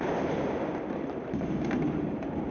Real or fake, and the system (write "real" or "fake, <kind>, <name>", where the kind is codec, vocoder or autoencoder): fake, vocoder, BigVGAN v2